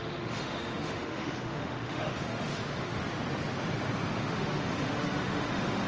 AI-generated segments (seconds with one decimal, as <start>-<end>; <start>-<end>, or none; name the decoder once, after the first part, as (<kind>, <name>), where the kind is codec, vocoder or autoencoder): 0.0-3.0 (autoencoder, DAC-VAE); 4.1-5.9